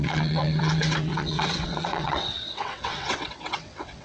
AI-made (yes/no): yes